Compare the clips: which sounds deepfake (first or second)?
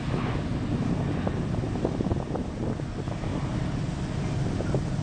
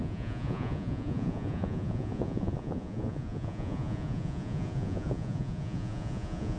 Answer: second